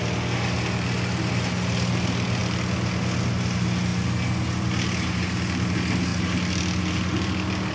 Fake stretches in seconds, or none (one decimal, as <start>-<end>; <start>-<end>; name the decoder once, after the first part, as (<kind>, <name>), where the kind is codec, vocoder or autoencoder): none